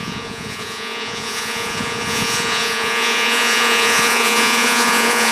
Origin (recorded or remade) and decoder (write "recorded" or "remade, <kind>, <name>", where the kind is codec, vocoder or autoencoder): remade, vocoder, Vocos